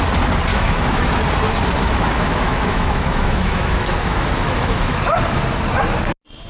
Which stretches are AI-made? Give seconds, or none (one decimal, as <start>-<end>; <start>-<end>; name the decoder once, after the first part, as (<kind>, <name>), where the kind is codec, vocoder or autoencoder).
0.5-1.1 (autoencoder, DAC-VAE); 1.8-5.0